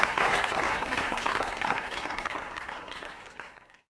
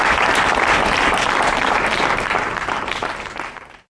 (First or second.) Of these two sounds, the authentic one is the second